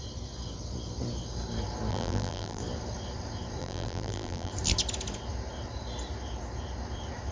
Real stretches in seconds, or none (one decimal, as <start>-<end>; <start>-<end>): 0.0-1.9; 2.6-3.6; 4.5-7.3